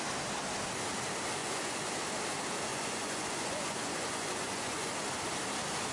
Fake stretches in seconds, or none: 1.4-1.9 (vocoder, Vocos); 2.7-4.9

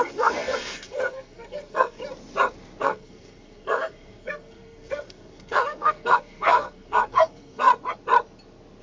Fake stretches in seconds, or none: 0.0-2.0 (codec, SNAC); 2.8-7.7

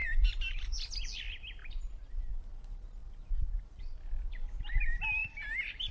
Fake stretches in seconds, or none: 0.0-0.7 (vocoder, BigVGAN v2); 1.6-2.3; 5.2-5.9

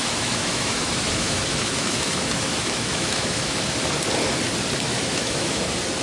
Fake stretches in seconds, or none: 0.0-3.6 (autoencoder, DAC-VAE); 4.9-5.6

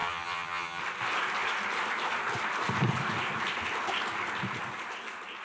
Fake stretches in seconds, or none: 0.0-0.8 (vocoder, HiFi-GAN)

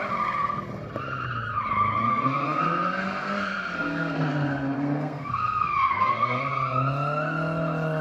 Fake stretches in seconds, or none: 2.1-6.5 (codec, SNAC)

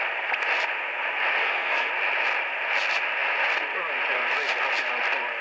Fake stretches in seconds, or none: 1.4-1.9 (codec, SNAC)

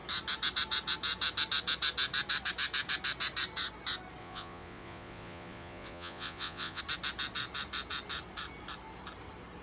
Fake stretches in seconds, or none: 4.2-6.8 (vocoder, Vocos)